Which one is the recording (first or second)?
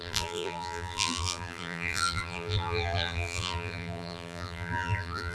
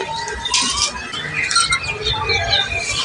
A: second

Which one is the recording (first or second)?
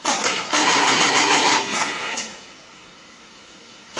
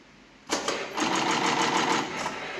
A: second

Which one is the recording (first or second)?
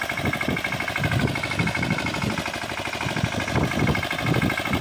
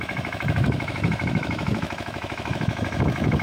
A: first